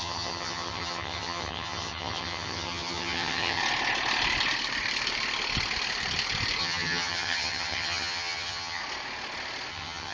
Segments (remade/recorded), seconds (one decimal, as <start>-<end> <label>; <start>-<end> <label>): 0.0-3.6 remade; 3.6-6.6 recorded; 6.6-8.8 remade; 8.8-9.7 recorded; 9.7-10.1 remade